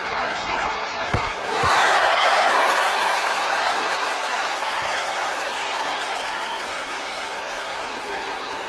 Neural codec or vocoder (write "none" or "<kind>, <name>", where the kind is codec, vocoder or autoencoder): codec, SNAC